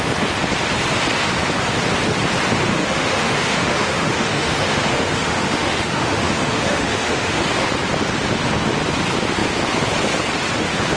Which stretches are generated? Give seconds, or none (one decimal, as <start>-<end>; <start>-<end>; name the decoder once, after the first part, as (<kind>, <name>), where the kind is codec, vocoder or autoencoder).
2.7-7.4 (autoencoder, DAC-VAE)